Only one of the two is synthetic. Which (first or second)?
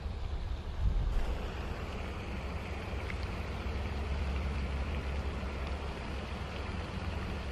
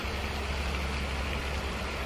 first